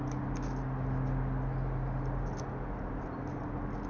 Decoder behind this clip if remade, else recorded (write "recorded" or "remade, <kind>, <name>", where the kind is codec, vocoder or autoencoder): recorded